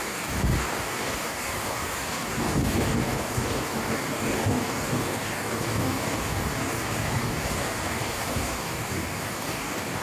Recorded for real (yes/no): no